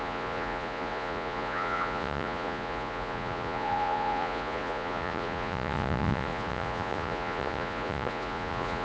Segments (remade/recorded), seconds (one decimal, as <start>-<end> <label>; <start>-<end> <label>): 0.0-8.8 remade